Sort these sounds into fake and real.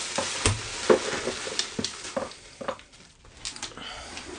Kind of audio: real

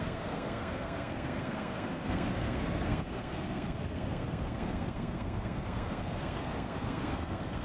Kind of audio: fake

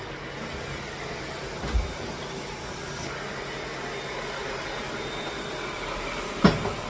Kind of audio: real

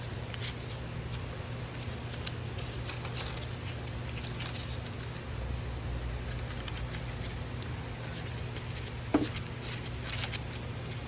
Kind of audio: real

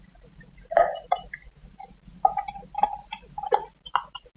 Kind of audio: fake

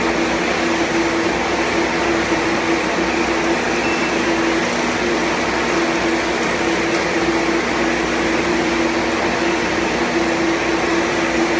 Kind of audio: real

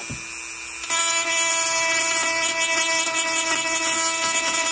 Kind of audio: real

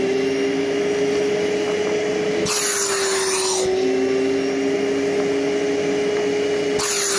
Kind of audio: real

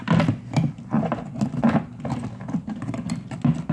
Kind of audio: real